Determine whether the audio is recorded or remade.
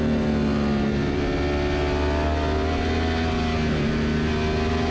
recorded